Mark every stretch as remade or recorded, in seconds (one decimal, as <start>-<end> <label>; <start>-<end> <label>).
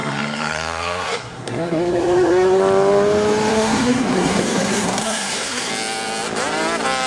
0.0-2.6 remade; 2.6-3.5 recorded; 3.5-5.7 remade; 5.7-7.1 recorded